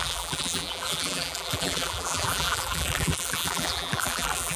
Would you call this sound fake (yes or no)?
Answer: yes